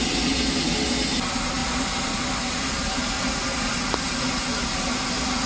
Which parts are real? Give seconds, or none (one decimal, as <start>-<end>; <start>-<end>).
0.0-1.6; 2.2-5.5